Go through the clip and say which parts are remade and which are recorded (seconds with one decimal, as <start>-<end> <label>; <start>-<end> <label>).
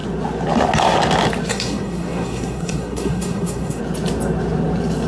0.0-1.5 recorded; 1.5-3.8 remade; 3.8-5.1 recorded